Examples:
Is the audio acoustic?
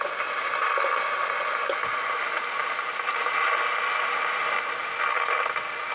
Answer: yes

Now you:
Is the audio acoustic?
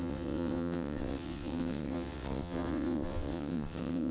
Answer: no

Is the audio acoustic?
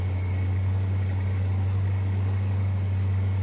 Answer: no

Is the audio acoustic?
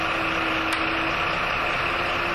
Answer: yes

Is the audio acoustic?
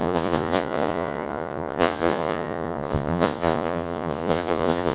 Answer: no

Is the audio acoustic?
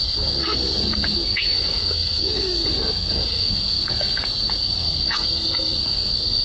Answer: no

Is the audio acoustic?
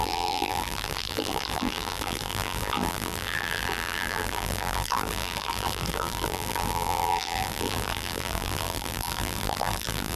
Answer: no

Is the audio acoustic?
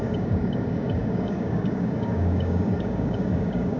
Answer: no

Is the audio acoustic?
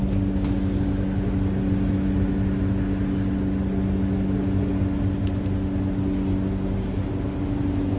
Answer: yes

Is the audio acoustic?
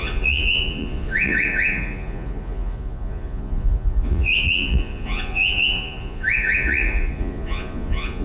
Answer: no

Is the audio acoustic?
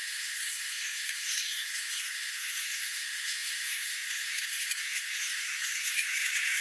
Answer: no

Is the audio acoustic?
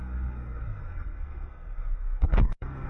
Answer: no